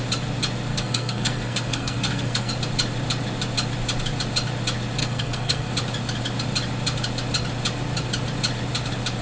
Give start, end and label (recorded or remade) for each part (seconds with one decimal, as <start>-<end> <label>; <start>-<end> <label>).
0.0-0.7 recorded; 0.7-2.5 remade; 2.5-5.0 recorded; 5.0-5.7 remade; 5.7-9.2 recorded